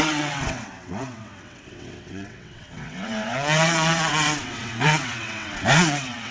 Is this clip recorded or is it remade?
remade